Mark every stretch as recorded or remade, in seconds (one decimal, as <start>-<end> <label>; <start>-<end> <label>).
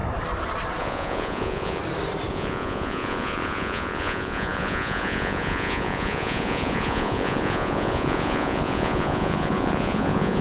0.0-0.8 recorded; 0.8-1.8 remade; 1.8-2.3 recorded; 2.3-10.4 remade